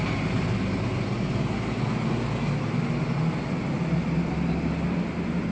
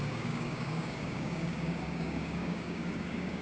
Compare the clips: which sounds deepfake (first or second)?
second